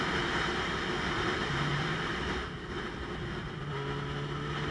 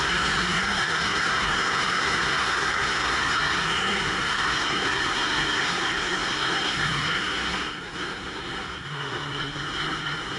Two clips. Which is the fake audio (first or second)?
second